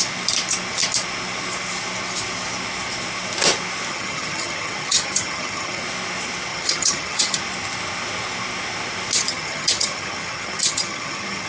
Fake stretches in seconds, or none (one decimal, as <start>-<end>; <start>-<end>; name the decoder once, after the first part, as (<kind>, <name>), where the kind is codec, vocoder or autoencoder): 3.9-5.8 (vocoder, HiFi-GAN); 6.5-7.4; 9.3-11.5